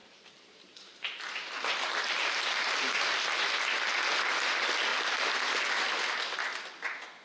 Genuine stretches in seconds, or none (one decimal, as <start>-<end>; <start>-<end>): 3.4-4.9; 5.6-7.2